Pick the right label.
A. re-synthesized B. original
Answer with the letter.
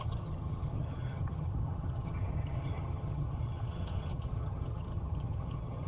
A